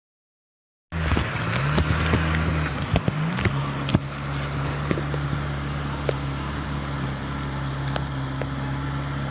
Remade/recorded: recorded